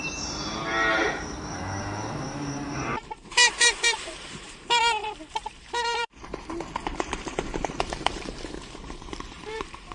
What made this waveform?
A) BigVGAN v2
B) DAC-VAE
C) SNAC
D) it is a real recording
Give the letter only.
A